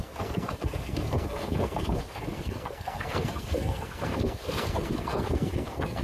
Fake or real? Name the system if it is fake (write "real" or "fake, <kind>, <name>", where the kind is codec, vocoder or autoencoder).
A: fake, codec, SNAC